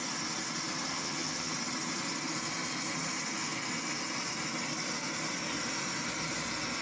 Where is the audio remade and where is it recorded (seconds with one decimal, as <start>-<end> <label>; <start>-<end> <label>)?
0.0-0.9 recorded; 0.9-1.5 remade; 1.5-6.8 recorded